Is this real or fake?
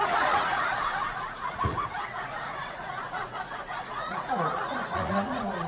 fake